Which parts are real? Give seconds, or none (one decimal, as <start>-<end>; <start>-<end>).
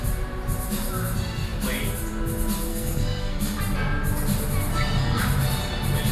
0.0-2.7; 3.6-4.7; 5.2-6.1